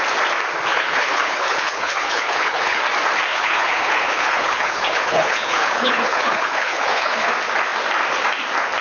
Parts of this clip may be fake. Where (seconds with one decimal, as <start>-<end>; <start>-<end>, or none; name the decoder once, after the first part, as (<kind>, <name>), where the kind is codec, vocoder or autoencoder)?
0.7-2.8 (codec, HILCodec); 3.3-7.3